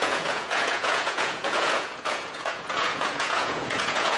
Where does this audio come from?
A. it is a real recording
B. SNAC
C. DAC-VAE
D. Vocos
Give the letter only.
D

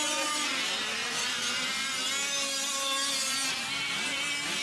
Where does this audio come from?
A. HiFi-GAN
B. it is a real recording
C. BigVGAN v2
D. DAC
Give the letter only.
B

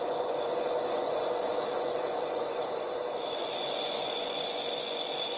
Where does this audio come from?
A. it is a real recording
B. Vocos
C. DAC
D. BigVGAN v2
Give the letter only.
B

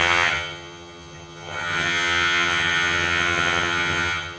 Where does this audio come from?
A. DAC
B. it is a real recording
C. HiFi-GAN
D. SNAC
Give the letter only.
C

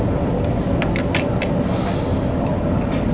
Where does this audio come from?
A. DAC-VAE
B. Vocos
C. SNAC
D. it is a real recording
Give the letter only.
D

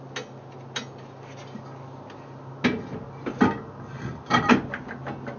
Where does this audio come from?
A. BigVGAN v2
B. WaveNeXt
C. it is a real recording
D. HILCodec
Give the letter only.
C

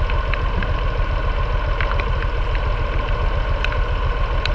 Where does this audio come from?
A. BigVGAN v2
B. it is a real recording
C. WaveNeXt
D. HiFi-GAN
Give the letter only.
B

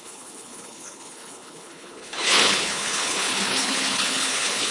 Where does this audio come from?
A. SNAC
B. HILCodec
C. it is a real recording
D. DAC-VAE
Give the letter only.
B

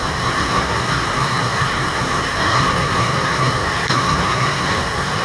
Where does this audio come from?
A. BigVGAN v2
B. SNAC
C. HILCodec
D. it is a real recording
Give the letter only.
B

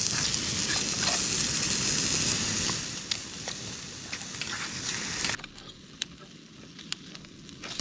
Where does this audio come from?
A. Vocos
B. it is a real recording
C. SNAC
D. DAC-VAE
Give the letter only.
B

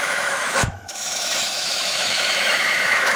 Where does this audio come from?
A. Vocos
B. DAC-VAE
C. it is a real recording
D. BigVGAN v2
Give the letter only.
B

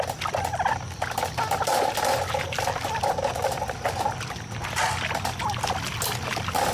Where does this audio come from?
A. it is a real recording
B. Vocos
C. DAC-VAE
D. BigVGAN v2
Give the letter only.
A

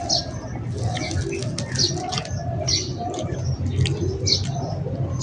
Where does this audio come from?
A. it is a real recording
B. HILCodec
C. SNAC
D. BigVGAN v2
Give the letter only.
A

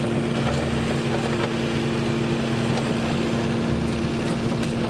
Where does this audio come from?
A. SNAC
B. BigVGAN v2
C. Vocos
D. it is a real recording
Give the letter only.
D